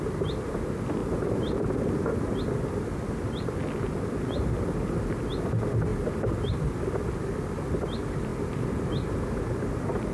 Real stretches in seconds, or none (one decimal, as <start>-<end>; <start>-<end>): 0.0-1.0; 2.1-10.1